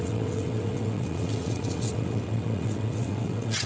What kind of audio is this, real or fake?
fake